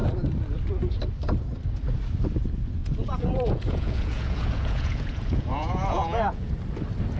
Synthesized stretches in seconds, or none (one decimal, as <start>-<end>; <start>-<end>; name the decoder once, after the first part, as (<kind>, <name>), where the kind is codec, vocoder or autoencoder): 2.8-6.5 (vocoder, Vocos)